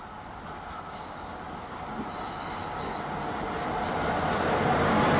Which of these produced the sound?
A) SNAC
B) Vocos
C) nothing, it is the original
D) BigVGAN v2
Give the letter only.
C